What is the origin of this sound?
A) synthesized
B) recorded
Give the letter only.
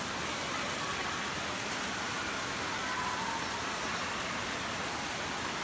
B